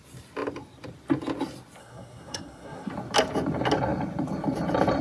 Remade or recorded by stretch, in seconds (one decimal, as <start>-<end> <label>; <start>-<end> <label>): 0.0-1.8 recorded; 1.8-2.9 remade; 2.9-5.0 recorded